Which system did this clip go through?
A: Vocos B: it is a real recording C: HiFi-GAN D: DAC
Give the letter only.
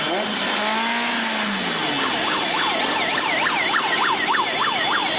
B